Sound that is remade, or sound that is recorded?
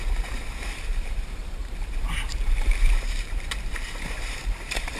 remade